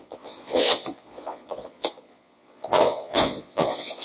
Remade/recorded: remade